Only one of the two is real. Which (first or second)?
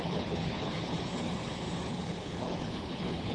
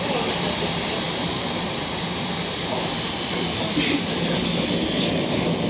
second